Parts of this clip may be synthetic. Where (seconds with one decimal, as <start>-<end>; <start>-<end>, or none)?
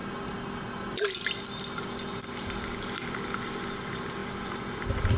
none